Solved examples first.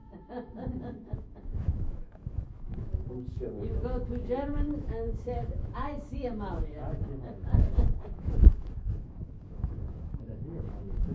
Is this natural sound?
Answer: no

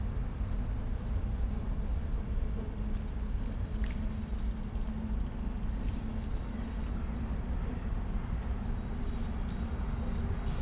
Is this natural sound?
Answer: yes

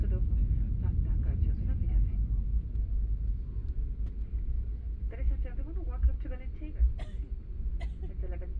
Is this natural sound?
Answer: yes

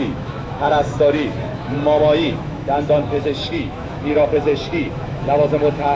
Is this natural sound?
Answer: no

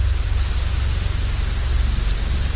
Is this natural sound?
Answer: yes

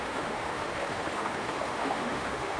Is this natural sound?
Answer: no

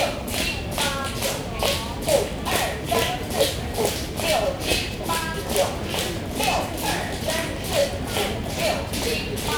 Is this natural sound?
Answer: yes